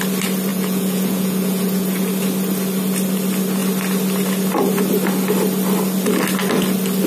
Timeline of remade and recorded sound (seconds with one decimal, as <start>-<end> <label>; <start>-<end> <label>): 0.0-0.5 recorded; 0.5-2.1 remade; 2.1-7.1 recorded

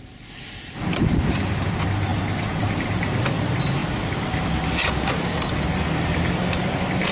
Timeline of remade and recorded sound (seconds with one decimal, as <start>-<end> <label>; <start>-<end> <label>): 0.0-3.8 remade; 3.8-7.1 recorded

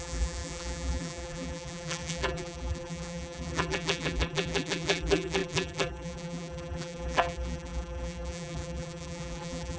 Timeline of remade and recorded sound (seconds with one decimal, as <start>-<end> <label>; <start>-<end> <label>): 0.0-9.8 remade

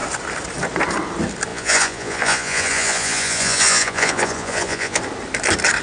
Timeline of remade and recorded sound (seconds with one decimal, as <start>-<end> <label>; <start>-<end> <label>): 0.0-1.5 recorded; 1.5-5.0 remade; 5.0-5.8 recorded

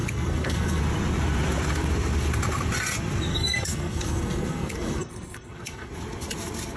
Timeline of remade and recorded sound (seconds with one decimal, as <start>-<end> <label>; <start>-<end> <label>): 0.0-0.8 remade; 0.8-3.3 recorded; 3.3-5.9 remade; 5.9-6.8 recorded